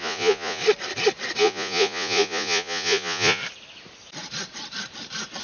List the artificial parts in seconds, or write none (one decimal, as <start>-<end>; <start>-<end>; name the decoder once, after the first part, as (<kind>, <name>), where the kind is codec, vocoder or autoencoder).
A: 0.0-0.6 (vocoder, Vocos); 1.4-3.4